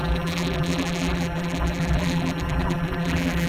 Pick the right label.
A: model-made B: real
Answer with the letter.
A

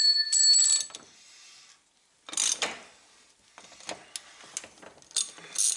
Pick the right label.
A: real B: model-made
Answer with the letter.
A